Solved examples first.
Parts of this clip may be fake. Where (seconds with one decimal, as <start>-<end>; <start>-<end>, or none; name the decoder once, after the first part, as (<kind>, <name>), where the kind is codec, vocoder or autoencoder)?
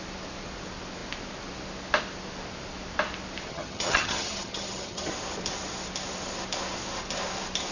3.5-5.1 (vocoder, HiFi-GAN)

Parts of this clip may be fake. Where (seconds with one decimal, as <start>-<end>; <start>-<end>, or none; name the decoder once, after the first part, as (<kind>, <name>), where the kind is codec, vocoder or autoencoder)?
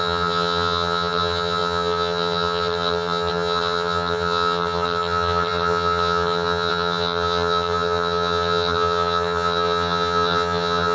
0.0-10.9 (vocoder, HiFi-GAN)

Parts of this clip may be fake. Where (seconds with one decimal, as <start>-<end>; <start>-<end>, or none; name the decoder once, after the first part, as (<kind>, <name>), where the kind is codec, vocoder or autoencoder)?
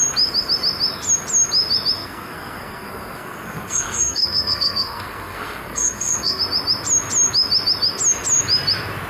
2.0-6.4 (codec, SNAC)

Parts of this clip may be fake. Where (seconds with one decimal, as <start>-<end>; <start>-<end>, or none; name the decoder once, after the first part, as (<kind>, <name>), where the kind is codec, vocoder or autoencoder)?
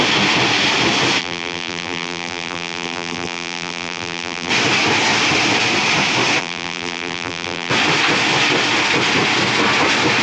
1.2-4.5 (vocoder, BigVGAN v2); 6.4-7.7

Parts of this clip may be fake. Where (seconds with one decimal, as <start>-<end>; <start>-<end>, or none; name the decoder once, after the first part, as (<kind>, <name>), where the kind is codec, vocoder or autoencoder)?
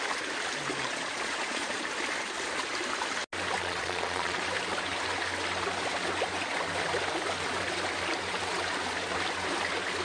0.7-1.8 (vocoder, Vocos); 3.6-4.4